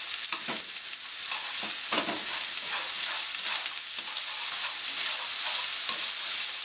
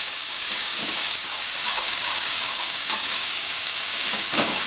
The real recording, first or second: first